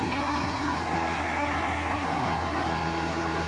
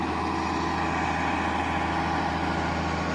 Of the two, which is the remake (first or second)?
first